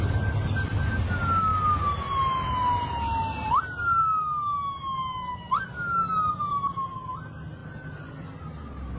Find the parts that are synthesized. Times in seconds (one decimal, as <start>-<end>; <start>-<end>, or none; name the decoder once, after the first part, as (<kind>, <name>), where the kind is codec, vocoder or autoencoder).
none

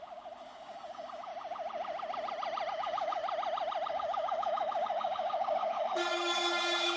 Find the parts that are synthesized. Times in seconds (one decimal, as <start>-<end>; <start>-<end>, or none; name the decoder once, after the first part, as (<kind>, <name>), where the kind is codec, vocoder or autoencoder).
0.0-1.3 (codec, DAC); 2.7-3.2; 3.9-7.0

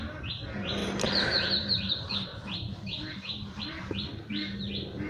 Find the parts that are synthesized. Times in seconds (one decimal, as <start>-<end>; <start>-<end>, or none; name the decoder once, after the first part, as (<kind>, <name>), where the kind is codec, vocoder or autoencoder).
none

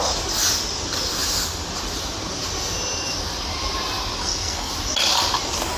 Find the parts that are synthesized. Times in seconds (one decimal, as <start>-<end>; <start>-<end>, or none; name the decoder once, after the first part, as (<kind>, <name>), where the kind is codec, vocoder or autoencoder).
4.2-4.7 (codec, SNAC)

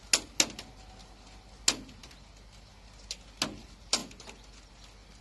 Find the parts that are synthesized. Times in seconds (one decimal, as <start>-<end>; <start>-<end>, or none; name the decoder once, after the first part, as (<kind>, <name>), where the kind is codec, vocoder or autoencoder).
none